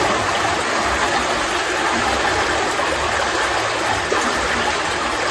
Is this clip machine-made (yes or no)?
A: no